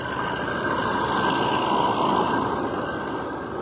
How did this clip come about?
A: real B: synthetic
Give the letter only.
A